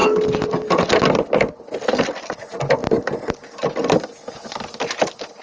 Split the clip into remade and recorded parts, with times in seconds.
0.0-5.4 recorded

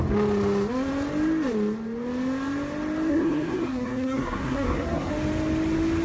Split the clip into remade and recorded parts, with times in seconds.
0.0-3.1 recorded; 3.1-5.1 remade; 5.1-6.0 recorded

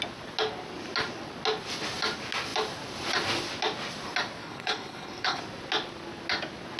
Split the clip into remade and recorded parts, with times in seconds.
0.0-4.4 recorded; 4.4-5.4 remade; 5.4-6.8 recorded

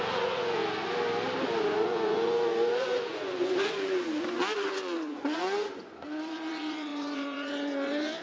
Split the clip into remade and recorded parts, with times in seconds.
0.0-0.6 remade; 0.6-1.6 recorded; 1.6-8.2 remade

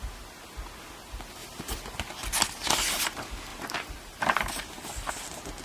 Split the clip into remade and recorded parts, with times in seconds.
0.0-3.5 recorded; 3.5-5.1 remade; 5.1-5.6 recorded

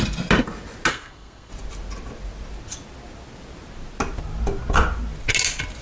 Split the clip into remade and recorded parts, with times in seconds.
0.0-0.9 recorded; 0.9-1.5 remade; 1.5-5.8 recorded

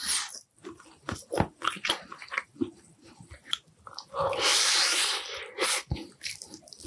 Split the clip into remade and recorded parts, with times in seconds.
0.0-6.9 remade

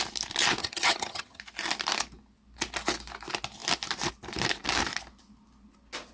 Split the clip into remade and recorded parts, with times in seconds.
0.0-0.6 recorded; 0.6-1.4 remade; 1.4-6.1 recorded